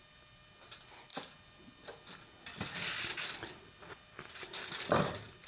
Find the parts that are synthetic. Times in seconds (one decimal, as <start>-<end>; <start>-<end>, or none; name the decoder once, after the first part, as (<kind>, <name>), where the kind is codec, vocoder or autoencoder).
none